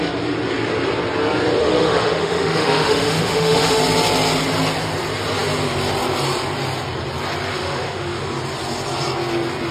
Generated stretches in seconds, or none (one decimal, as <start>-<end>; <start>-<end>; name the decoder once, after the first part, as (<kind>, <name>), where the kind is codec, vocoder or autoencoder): 1.6-3.8 (autoencoder, DAC-VAE); 7.5-8.2